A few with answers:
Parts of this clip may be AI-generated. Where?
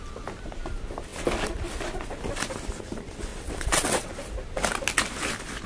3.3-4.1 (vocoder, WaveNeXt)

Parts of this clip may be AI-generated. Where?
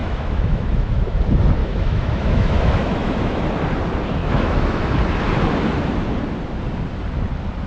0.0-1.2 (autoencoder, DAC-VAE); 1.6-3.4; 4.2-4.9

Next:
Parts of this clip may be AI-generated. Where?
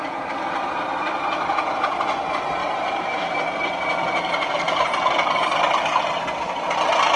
2.6-5.5 (vocoder, BigVGAN v2)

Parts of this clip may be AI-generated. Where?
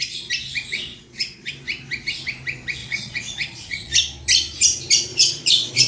0.9-1.5 (vocoder, Vocos); 2.8-3.9; 5.1-5.9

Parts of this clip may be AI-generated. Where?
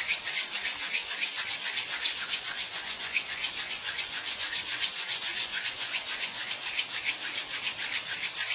0.8-1.5 (vocoder, Vocos); 2.1-6.5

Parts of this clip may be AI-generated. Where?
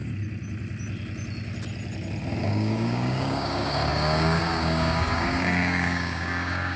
2.4-6.8 (codec, DAC)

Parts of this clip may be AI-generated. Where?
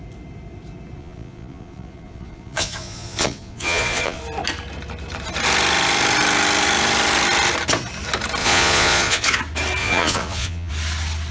1.0-4.2 (vocoder, Vocos); 8.4-9.4; 9.8-10.7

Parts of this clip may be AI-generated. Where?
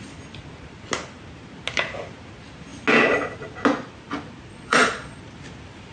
4.5-5.2 (vocoder, Vocos)